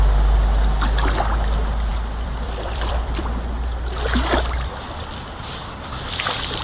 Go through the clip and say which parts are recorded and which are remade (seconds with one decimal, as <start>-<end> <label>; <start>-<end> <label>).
0.0-1.9 recorded; 1.9-5.0 remade; 5.0-6.6 recorded